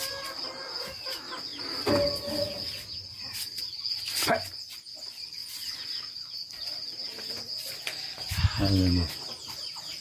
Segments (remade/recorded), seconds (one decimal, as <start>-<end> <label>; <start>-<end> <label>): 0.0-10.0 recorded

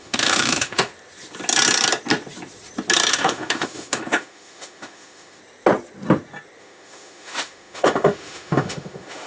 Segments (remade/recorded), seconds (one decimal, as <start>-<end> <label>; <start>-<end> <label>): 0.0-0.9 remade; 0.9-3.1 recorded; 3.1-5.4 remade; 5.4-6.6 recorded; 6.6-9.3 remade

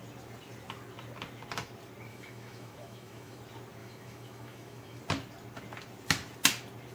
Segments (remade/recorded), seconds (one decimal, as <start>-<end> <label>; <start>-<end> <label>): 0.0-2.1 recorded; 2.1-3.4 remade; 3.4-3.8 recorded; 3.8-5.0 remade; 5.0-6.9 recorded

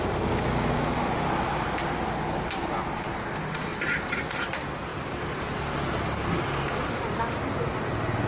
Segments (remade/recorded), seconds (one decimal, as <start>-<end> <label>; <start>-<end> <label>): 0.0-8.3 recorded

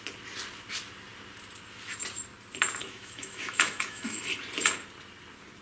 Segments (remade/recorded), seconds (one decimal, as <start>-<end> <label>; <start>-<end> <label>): 0.0-2.8 recorded; 2.8-4.2 remade; 4.2-5.6 recorded

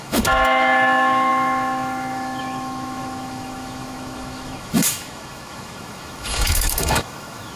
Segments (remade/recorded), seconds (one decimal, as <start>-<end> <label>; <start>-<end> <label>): 0.0-7.6 remade

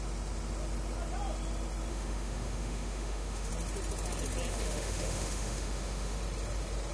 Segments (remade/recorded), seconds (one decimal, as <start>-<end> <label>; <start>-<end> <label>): 0.0-1.9 recorded; 1.9-3.5 remade; 3.5-4.5 recorded; 4.5-6.2 remade; 6.2-6.9 recorded

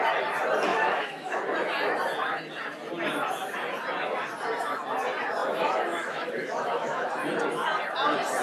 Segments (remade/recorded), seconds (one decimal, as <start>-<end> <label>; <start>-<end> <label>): 0.0-0.7 recorded; 0.7-1.4 remade; 1.4-5.4 recorded; 5.4-7.1 remade; 7.1-8.4 recorded